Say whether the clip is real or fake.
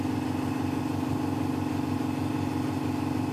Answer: real